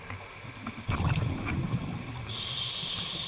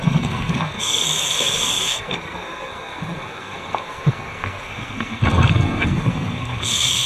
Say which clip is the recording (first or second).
first